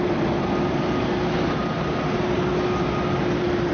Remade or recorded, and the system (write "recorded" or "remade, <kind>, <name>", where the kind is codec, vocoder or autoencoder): recorded